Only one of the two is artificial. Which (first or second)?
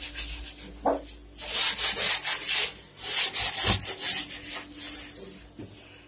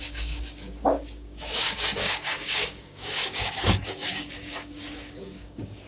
second